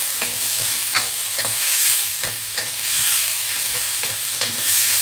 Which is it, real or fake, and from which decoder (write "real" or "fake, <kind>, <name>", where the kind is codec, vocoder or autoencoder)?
fake, codec, DAC